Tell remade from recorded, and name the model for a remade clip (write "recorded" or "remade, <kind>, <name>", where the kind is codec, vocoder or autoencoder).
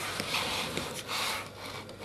recorded